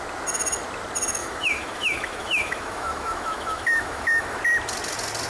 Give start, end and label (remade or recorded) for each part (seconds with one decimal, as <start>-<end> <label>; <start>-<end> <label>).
0.0-1.2 recorded; 1.2-4.4 remade; 4.4-5.3 recorded